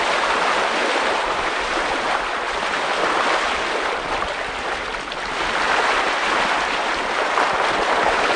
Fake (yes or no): no